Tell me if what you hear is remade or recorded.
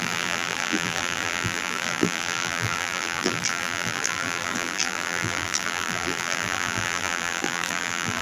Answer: remade